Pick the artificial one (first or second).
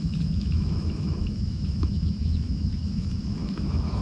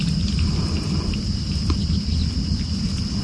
first